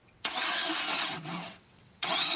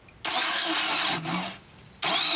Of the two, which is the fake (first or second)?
first